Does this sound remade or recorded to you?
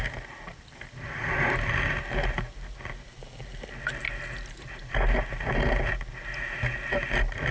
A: recorded